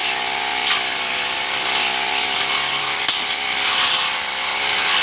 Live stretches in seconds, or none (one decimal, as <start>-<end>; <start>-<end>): 0.0-5.0